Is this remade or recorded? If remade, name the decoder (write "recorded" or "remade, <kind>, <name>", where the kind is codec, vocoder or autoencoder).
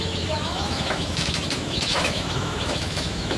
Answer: remade, autoencoder, DAC-VAE